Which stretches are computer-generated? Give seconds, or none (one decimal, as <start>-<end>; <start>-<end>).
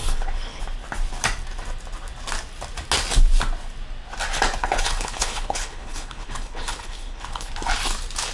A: 0.0-0.6; 4.6-7.5